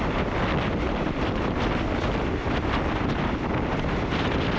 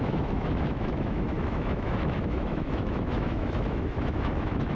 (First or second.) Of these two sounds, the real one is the first